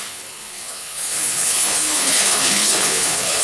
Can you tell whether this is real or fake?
fake